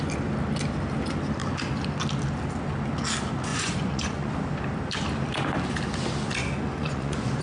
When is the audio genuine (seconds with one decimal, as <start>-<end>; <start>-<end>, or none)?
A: 0.0-3.5; 4.3-6.4